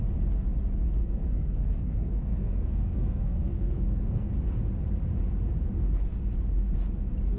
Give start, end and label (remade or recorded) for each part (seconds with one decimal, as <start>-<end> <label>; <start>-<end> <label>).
0.0-1.0 recorded; 1.0-4.3 remade; 4.3-7.4 recorded